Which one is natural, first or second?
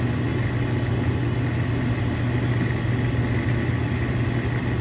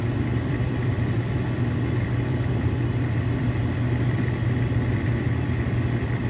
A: first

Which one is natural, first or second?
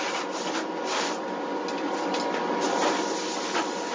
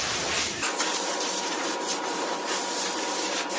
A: first